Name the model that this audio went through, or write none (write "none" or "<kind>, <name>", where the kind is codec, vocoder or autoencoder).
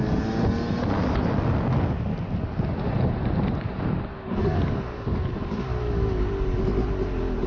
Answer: none